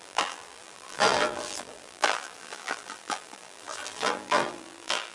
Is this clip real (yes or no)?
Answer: no